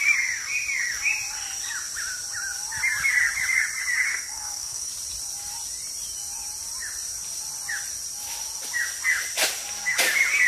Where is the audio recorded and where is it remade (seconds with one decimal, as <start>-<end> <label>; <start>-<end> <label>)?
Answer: 0.0-4.1 recorded; 4.1-4.9 remade; 4.9-10.5 recorded